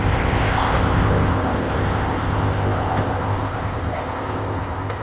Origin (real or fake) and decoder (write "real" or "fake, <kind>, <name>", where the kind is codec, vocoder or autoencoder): fake, codec, ZipCodec